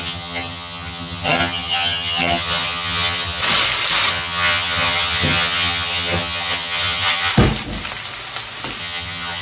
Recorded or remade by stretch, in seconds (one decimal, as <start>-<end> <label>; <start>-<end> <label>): 0.0-3.4 remade; 3.4-4.1 recorded; 4.1-7.3 remade; 7.3-8.8 recorded; 8.8-9.4 remade